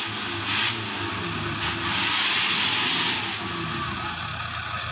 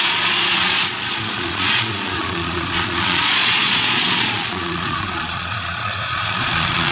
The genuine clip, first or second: first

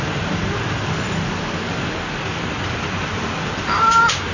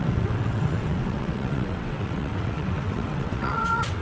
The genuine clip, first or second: first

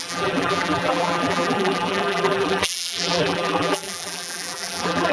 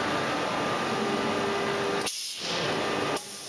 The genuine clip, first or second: second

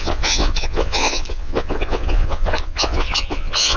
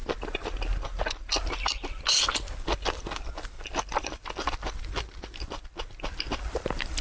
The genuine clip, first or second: second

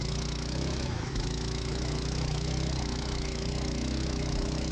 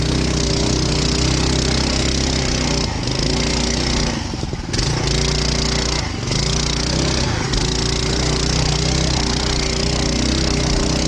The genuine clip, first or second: second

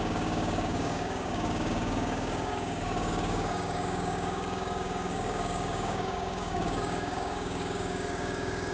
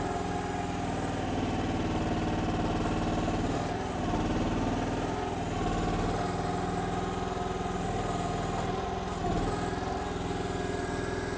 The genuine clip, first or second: second